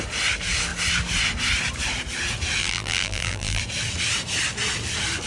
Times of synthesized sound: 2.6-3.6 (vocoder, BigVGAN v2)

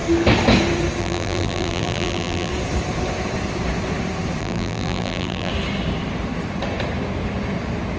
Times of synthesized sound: 1.0-2.5 (vocoder, BigVGAN v2); 4.4-5.5

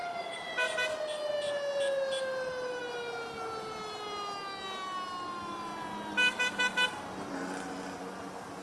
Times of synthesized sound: none

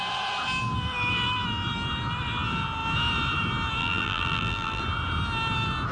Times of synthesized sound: 3.8-4.8 (vocoder, BigVGAN v2)

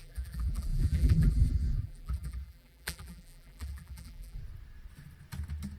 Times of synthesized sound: 0.0-4.4 (vocoder, BigVGAN v2)

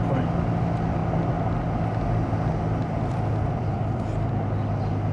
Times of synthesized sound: none

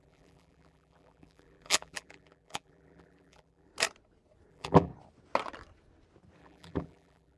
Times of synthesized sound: 0.0-3.7 (vocoder, BigVGAN v2); 4.5-4.9; 6.4-7.4

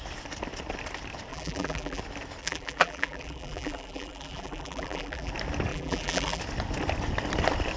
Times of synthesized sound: 1.3-2.0 (vocoder, BigVGAN v2); 2.4-5.3; 5.7-6.4